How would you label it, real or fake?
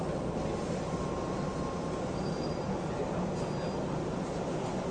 real